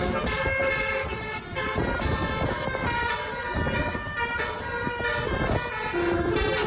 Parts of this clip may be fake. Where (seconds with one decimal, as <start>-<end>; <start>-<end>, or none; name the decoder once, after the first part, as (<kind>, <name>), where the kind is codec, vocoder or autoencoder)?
none